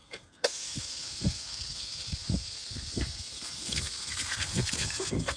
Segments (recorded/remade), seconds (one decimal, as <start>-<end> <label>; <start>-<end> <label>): 0.0-5.4 remade